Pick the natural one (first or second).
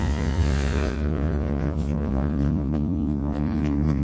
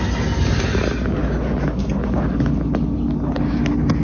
second